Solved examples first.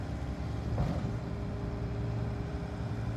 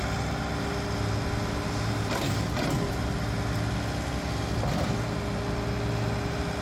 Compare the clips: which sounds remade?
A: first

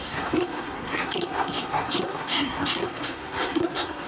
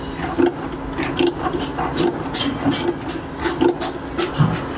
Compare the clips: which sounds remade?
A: first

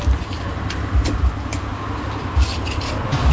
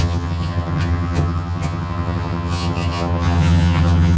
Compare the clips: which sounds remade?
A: second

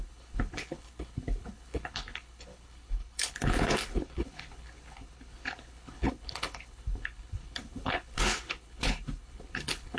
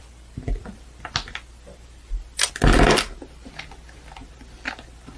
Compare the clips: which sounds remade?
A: first